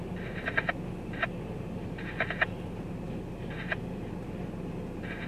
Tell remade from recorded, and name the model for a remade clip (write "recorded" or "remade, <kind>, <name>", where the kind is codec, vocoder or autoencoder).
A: recorded